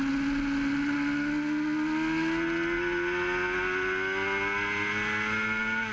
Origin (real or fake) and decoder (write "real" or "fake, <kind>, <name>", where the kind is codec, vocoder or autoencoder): real